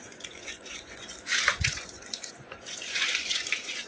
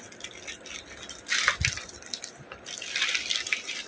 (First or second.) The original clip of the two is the second